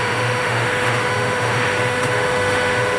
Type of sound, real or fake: fake